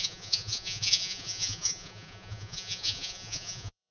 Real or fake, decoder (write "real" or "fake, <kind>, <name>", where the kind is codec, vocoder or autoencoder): fake, vocoder, Vocos